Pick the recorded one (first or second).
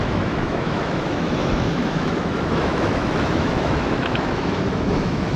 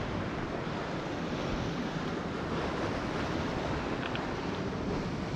second